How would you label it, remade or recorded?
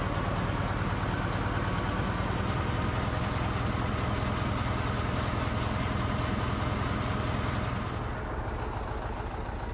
recorded